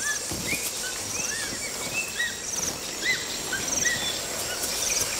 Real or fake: real